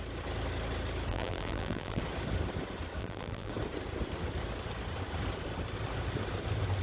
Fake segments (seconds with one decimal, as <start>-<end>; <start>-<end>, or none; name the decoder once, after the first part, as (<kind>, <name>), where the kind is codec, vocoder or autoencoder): 1.1-2.0 (vocoder, BigVGAN v2); 3.0-3.5